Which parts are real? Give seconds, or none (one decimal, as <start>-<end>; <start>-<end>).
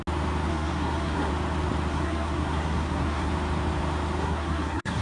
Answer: 0.0-0.5; 1.3-1.9; 3.3-4.2